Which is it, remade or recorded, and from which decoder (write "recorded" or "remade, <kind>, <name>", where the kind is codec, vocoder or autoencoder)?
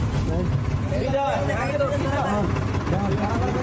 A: recorded